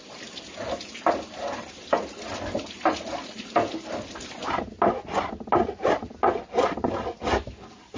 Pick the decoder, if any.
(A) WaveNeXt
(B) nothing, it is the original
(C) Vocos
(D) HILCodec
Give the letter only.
B